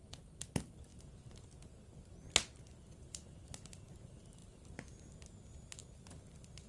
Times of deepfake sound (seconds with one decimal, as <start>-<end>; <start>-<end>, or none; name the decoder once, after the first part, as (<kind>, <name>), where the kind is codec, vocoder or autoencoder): none